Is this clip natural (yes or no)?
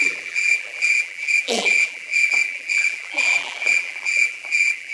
no